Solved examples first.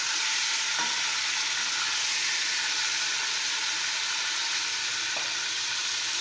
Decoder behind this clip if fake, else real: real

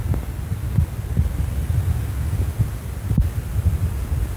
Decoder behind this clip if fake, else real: real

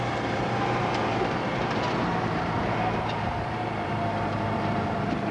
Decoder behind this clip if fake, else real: fake, vocoder, BigVGAN v2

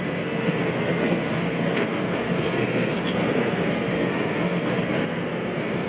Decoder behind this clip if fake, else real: fake, codec, SNAC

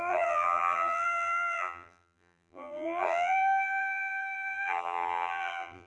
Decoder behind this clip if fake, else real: fake, vocoder, BigVGAN v2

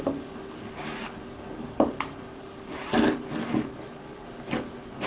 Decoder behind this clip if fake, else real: real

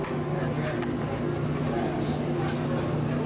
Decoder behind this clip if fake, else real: real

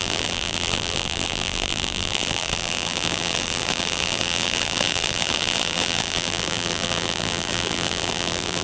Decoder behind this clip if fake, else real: fake, vocoder, BigVGAN v2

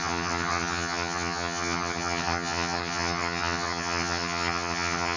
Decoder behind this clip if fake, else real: fake, vocoder, HiFi-GAN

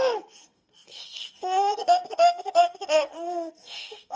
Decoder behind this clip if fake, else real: fake, codec, SNAC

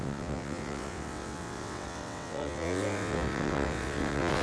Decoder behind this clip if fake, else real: fake, vocoder, WaveNeXt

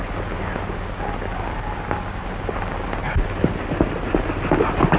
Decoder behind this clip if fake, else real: real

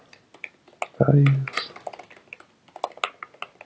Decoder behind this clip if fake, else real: real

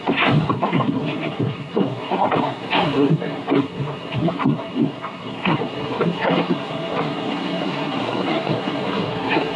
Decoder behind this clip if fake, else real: fake, codec, SNAC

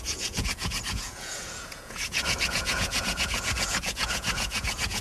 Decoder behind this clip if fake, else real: fake, vocoder, Vocos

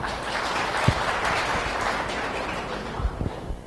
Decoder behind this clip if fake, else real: fake, vocoder, BigVGAN v2